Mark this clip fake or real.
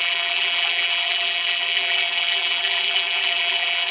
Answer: fake